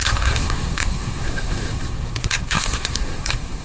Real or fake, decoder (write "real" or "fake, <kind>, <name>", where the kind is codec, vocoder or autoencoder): fake, codec, SNAC